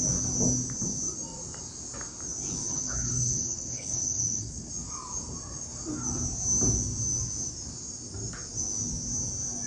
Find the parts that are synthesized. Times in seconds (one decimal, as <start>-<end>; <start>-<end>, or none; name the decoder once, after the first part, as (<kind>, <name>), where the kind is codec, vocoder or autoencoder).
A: 2.6-4.7 (codec, HILCodec)